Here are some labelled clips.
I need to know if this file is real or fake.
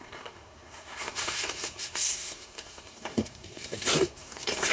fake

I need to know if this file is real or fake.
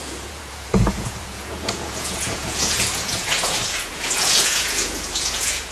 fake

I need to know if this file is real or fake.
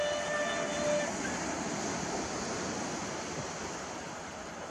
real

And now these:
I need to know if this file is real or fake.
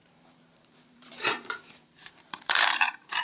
fake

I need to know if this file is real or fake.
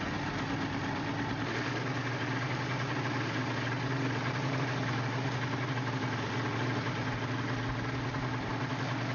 real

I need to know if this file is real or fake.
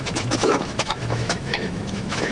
fake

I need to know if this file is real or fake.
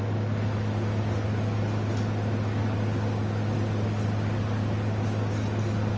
real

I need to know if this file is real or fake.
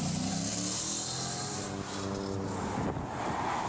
real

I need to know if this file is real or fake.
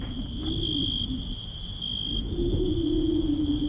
real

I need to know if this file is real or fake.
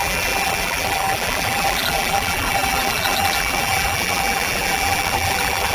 fake